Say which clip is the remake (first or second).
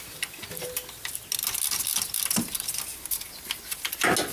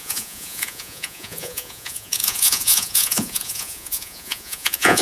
second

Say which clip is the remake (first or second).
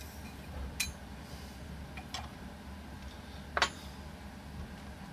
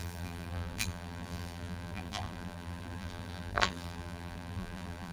second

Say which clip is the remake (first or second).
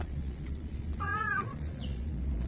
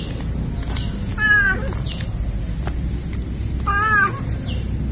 first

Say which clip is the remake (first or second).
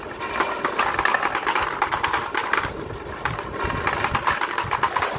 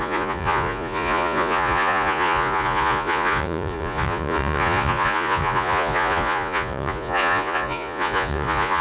second